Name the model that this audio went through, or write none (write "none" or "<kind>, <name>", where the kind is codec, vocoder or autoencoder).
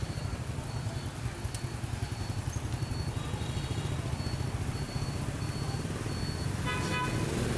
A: none